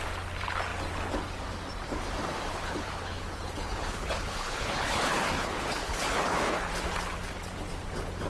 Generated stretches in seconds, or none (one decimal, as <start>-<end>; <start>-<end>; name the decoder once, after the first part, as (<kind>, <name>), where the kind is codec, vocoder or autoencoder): 2.5-6.7 (codec, HILCodec)